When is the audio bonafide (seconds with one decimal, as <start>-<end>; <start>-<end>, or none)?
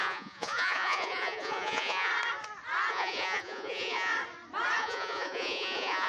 2.1-2.9; 4.1-4.8